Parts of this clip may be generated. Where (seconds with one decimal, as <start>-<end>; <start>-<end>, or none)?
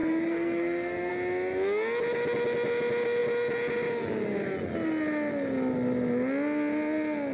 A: 0.0-1.1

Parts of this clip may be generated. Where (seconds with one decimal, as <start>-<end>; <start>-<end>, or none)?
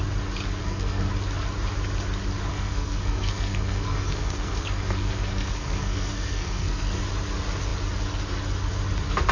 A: 0.6-1.1; 2.5-7.0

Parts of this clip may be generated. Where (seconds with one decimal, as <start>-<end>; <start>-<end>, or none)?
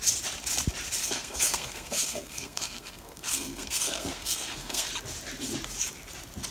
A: 1.0-4.9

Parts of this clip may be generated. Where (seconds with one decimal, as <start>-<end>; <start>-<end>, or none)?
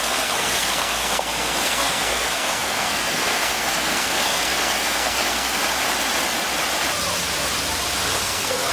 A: 0.0-5.6; 8.2-8.7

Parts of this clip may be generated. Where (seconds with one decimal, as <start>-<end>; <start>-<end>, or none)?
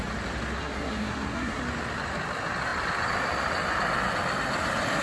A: 0.6-1.6